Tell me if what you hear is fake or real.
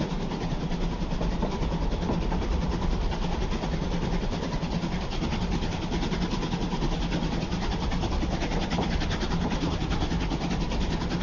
real